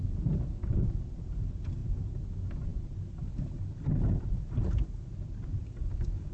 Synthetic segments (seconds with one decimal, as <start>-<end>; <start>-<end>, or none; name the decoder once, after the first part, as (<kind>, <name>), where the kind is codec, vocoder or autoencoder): 1.8-2.3 (vocoder, BigVGAN v2)